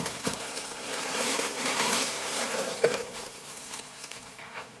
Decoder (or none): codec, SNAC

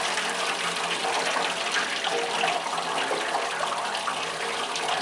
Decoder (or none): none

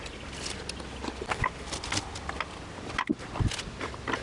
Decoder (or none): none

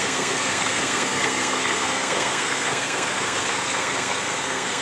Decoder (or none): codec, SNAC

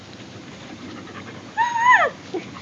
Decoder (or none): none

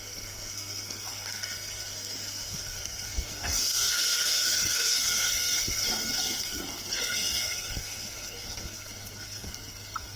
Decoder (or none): codec, SNAC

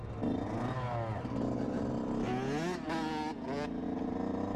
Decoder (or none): none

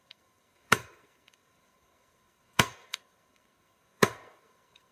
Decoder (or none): codec, SNAC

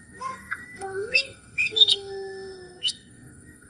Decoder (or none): codec, SNAC